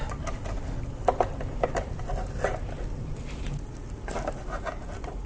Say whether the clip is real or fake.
real